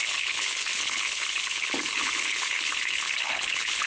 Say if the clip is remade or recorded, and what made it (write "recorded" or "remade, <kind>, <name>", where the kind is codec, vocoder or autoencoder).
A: remade, codec, HILCodec